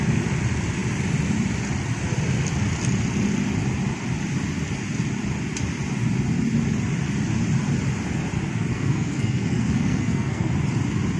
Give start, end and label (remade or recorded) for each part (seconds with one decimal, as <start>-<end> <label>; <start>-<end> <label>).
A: 0.0-8.7 recorded; 8.7-10.5 remade; 10.5-11.2 recorded